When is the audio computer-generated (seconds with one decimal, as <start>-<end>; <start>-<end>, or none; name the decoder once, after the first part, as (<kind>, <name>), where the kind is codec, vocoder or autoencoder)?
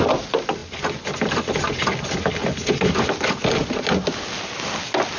none